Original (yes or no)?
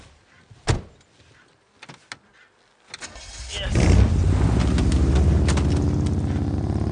yes